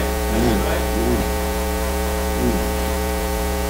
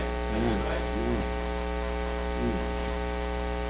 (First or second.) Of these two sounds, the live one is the second